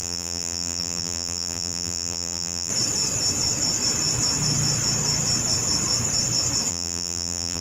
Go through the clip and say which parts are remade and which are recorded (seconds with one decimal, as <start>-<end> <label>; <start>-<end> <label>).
0.0-2.7 remade; 2.7-6.7 recorded; 6.7-7.6 remade